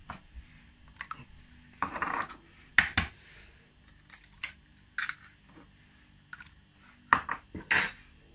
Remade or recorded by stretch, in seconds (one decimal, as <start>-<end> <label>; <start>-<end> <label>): 0.0-0.8 remade; 0.8-8.3 recorded